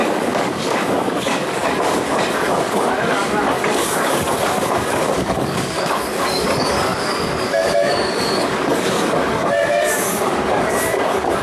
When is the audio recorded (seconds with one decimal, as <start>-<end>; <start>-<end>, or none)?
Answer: none